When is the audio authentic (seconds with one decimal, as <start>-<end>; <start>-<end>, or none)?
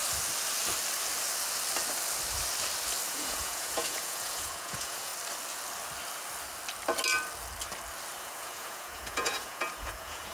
0.0-3.1; 5.1-8.2